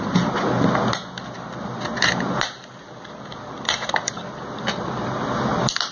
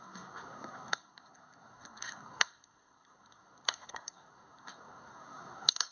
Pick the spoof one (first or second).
second